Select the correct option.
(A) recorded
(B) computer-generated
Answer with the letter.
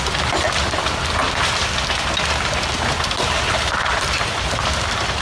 A